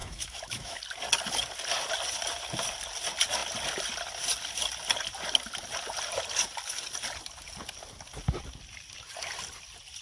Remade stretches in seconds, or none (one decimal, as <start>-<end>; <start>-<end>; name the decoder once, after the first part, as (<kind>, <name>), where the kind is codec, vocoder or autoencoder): 0.0-0.8 (autoencoder, DAC-VAE)